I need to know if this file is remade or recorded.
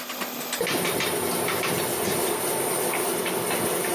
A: recorded